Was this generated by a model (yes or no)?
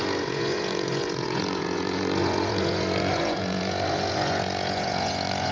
yes